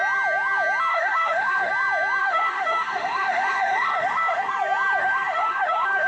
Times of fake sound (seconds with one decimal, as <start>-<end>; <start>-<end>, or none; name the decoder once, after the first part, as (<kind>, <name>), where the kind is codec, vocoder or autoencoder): 0.9-1.7 (autoencoder, DAC-VAE); 2.2-4.5; 5.0-6.1